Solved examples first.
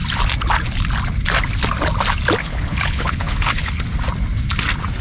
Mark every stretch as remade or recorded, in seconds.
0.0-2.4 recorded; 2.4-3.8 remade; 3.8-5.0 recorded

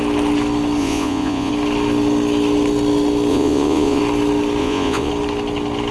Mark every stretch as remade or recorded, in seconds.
0.0-0.8 recorded; 0.8-1.5 remade; 1.5-3.3 recorded; 3.3-4.0 remade; 4.0-4.6 recorded; 4.6-5.1 remade; 5.1-5.9 recorded

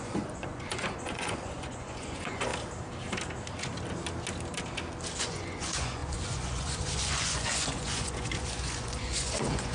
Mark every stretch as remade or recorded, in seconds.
0.0-2.5 remade; 2.5-5.2 recorded; 5.2-9.7 remade

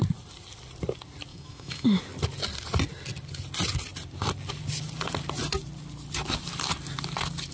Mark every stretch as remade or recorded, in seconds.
0.0-1.3 recorded; 1.3-2.0 remade; 2.0-7.5 recorded

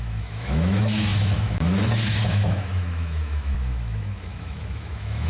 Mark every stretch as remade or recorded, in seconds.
0.0-5.3 remade